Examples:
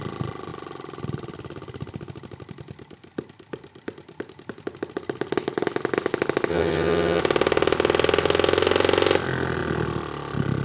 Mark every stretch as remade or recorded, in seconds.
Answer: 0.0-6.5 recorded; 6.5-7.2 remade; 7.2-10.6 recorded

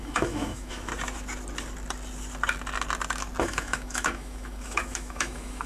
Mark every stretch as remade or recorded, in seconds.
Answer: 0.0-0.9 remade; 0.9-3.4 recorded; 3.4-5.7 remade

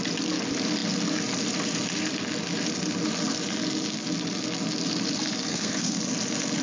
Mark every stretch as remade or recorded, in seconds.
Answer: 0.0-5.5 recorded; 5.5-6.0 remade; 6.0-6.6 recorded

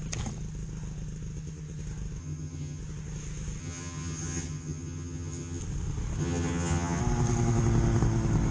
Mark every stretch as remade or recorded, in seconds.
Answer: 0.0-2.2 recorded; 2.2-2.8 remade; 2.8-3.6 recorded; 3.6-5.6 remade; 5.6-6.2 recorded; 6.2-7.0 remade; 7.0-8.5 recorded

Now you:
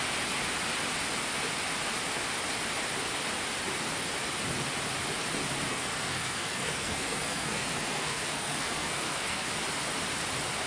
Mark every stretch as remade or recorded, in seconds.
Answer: 0.0-5.7 recorded; 5.7-9.5 remade; 9.5-10.7 recorded